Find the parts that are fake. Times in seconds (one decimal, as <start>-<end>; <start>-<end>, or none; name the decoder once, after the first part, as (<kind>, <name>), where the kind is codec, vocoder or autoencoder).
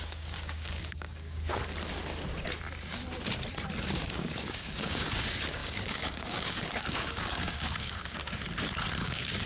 0.0-1.6 (codec, DAC); 4.0-8.2; 9.0-9.5